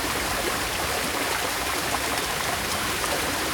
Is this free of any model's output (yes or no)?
no